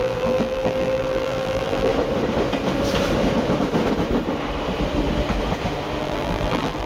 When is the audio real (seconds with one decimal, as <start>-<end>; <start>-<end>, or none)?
1.9-6.0